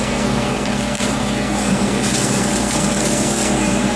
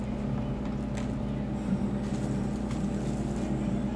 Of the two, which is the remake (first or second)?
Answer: first